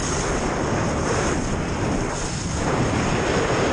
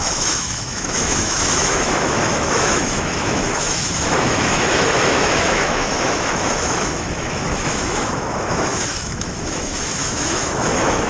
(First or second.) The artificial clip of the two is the second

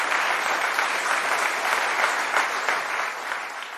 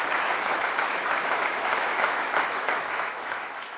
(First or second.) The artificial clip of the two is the second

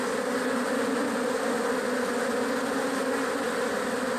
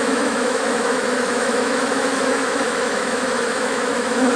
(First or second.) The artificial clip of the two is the second